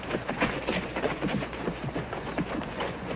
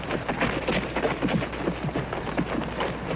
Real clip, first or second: second